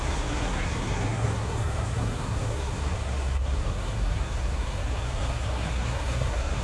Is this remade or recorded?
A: remade